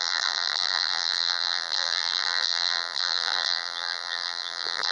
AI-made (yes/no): yes